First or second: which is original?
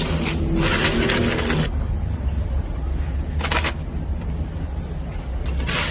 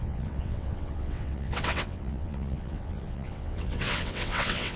first